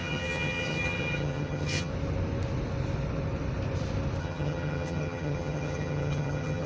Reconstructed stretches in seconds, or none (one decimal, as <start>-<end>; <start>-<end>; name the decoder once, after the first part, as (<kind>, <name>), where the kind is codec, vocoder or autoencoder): 0.0-1.9 (vocoder, HiFi-GAN); 4.2-6.7